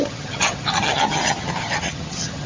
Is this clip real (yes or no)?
no